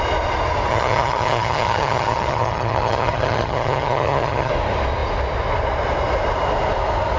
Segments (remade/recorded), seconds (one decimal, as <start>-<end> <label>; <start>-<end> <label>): 0.0-0.7 recorded; 0.7-4.5 remade; 4.5-7.2 recorded